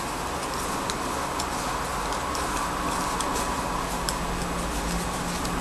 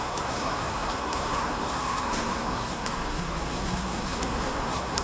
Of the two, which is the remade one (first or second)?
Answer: second